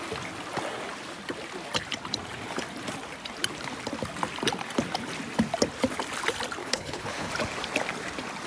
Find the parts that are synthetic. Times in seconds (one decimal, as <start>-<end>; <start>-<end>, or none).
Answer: 6.6-7.3